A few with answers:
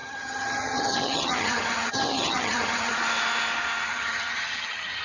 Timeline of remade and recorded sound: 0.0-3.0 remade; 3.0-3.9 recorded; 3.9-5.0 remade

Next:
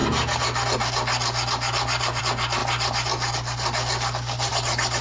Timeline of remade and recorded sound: 0.0-5.0 recorded

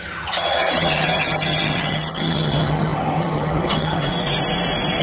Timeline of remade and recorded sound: 0.0-4.1 remade; 4.1-5.0 recorded

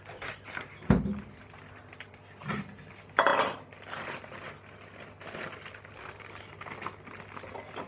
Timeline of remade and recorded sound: 0.0-7.9 recorded

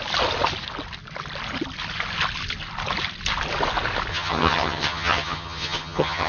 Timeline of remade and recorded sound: 0.0-4.1 recorded; 4.1-6.3 remade

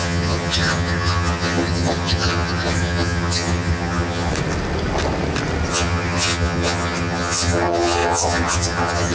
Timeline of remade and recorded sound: 0.0-4.3 remade; 4.3-5.7 recorded; 5.7-9.1 remade